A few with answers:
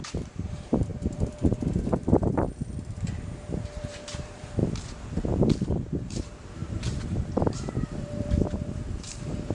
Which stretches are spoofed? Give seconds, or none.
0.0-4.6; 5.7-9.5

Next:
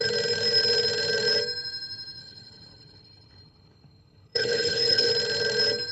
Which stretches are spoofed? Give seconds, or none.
2.2-5.1

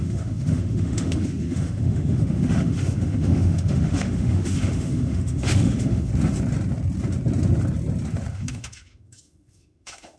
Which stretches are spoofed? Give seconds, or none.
0.0-6.1; 8.3-10.2

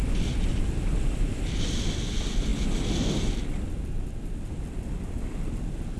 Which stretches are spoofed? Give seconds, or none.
none

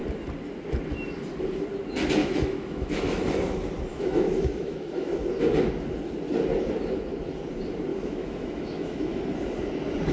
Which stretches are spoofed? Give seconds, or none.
2.2-3.4; 3.9-5.1; 7.9-9.2

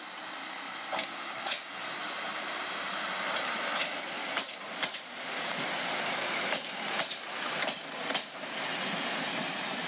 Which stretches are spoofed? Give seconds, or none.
2.3-3.5; 4.2-5.6

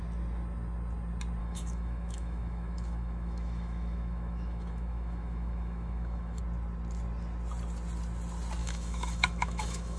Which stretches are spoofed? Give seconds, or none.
1.4-6.4; 8.6-10.0

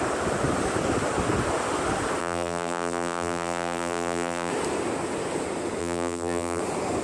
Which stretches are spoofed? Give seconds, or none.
2.2-4.5; 5.8-6.6